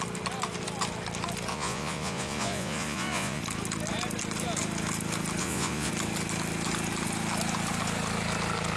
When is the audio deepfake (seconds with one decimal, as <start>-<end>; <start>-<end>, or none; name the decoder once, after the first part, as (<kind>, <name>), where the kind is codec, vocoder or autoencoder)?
1.5-3.4 (vocoder, Vocos); 5.4-5.9